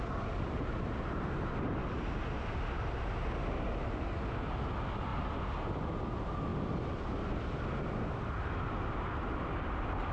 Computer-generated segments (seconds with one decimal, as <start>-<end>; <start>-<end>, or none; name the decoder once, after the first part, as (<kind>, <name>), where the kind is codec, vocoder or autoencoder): none